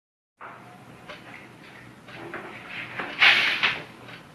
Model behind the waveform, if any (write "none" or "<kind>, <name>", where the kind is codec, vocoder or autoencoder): none